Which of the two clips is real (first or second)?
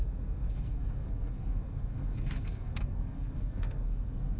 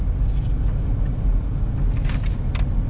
second